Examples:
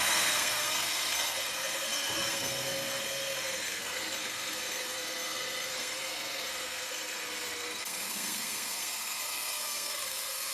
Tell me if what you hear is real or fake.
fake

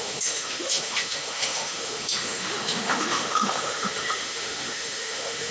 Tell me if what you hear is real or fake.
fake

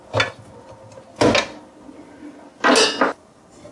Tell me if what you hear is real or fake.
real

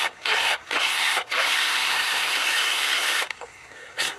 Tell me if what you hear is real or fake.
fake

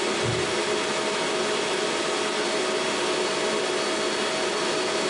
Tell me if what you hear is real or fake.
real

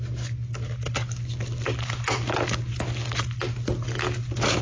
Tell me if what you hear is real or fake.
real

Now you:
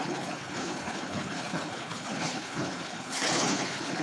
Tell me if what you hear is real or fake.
fake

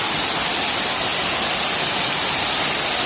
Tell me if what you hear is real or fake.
real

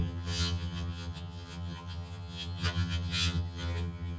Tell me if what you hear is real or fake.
fake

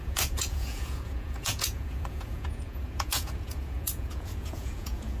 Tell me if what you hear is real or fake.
fake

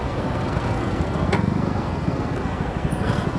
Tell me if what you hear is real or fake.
fake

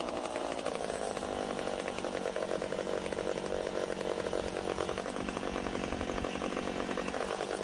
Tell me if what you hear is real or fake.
fake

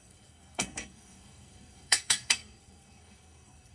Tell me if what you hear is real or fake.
fake